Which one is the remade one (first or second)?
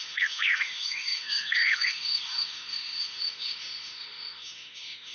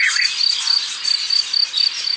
first